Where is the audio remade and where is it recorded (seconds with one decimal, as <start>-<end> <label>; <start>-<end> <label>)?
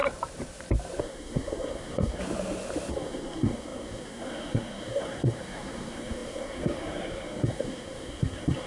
0.0-1.0 recorded; 1.0-2.2 remade; 2.2-2.9 recorded; 2.9-8.7 remade